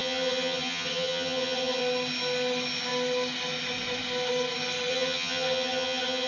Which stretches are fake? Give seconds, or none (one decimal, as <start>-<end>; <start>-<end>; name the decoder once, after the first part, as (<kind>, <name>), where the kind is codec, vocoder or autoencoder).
0.0-1.8 (vocoder, HiFi-GAN); 4.9-6.3